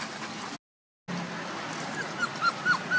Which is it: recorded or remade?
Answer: recorded